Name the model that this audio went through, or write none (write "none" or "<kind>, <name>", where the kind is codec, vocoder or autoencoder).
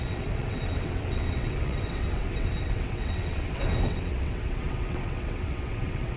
vocoder, WaveNeXt